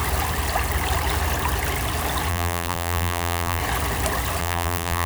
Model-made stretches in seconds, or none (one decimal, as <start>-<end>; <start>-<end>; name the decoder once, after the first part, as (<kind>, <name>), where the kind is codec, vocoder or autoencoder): 2.3-3.6 (vocoder, BigVGAN v2); 4.4-5.1